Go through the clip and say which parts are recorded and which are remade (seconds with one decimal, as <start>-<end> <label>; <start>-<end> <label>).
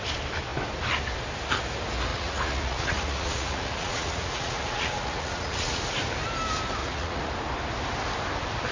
0.0-2.1 recorded; 2.1-5.8 remade; 5.8-6.8 recorded; 6.8-7.3 remade; 7.3-8.7 recorded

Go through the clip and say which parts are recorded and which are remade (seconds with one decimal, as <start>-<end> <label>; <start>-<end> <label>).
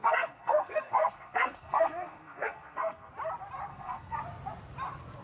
0.0-3.1 remade; 3.1-3.7 recorded; 3.7-4.2 remade; 4.2-5.2 recorded